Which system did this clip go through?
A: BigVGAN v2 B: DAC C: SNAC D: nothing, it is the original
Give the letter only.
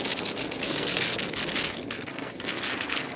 C